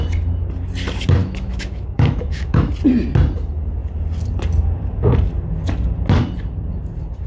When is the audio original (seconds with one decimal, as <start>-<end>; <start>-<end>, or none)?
0.0-1.2; 2.7-7.3